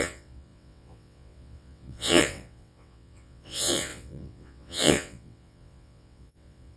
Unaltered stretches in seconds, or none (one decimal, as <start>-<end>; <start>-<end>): none

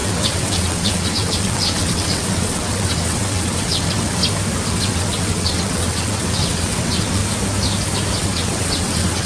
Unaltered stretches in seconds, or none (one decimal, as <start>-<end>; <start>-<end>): 4.2-4.7; 7.2-8.2

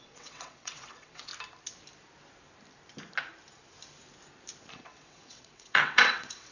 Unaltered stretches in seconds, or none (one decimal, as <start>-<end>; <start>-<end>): 1.3-4.7

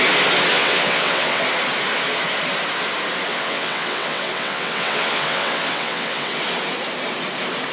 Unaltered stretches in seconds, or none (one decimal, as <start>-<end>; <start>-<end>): 0.0-0.5; 1.4-3.3; 6.4-7.7

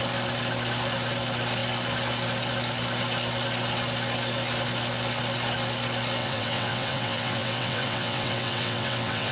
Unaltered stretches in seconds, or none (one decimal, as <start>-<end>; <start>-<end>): 0.0-6.2